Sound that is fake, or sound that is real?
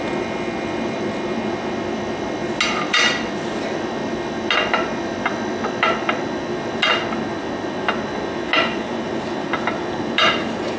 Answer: real